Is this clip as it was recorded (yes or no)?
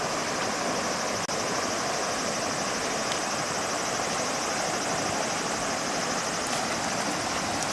yes